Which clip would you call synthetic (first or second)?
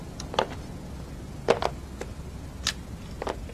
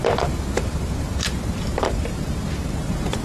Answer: second